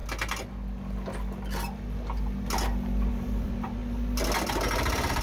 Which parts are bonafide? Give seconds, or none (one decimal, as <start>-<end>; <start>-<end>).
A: 0.0-3.1; 3.8-4.5